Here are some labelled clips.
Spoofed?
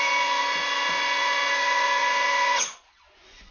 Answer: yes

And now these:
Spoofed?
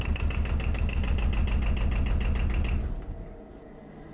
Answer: no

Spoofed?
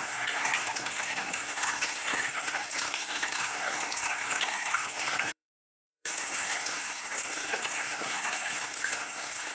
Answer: yes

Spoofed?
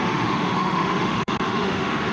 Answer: yes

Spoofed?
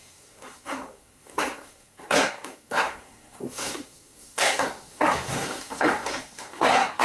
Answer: yes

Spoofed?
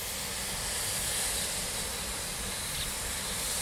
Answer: no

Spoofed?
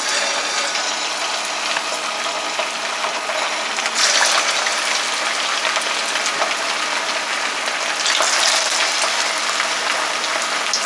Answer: no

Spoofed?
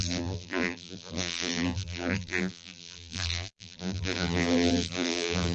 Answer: yes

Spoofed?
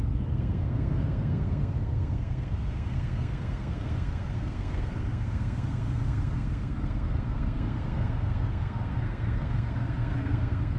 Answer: yes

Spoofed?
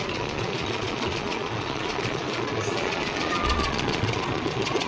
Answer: yes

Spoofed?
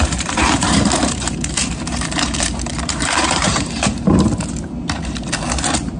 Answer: yes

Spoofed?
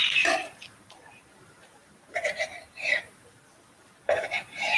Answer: yes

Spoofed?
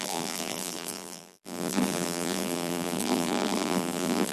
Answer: yes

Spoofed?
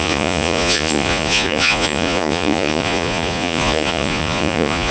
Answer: yes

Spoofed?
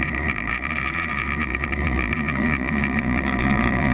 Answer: yes